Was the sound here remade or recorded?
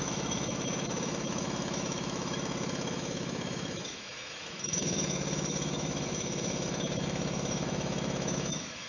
remade